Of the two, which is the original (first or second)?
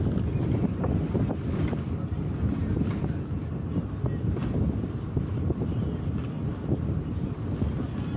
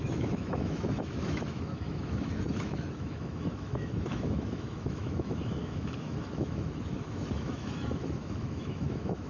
first